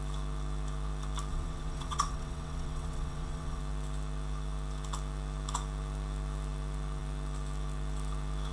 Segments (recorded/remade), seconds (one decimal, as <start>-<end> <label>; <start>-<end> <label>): 0.0-1.3 recorded; 1.3-3.6 remade; 3.6-8.5 recorded